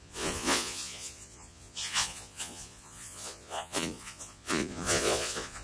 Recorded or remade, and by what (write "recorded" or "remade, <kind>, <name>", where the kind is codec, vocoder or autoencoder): remade, vocoder, Vocos